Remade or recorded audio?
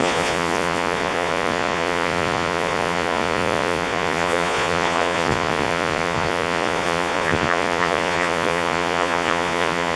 remade